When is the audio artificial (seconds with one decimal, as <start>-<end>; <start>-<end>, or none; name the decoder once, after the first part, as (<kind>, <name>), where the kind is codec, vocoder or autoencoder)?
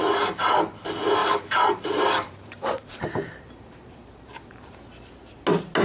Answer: 1.2-4.7 (vocoder, BigVGAN v2)